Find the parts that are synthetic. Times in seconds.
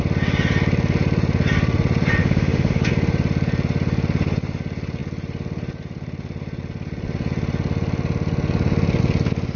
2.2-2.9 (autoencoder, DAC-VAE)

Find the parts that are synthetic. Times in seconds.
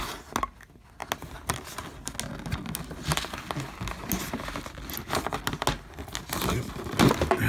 none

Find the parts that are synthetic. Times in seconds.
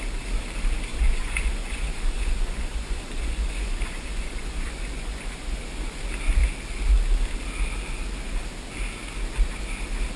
0.9-6.0 (vocoder, Vocos)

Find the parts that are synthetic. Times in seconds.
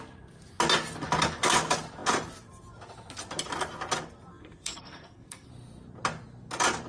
4.3-5.5 (codec, SNAC)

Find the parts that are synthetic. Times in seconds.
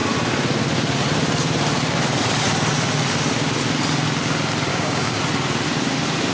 4.7-5.2 (codec, DAC)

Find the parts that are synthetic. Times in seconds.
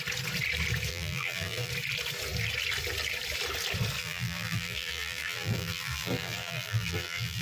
0.9-1.7 (vocoder, BigVGAN v2); 4.0-7.4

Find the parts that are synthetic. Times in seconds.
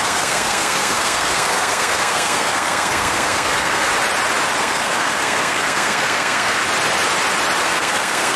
0.0-3.9 (codec, SNAC); 4.6-6.6; 7.6-8.4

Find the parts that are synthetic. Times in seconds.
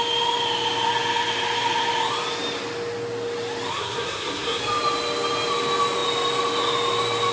3.7-4.6 (codec, SNAC)